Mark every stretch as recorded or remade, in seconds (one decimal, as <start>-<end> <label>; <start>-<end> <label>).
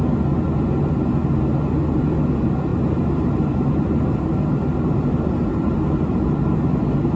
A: 0.0-7.2 recorded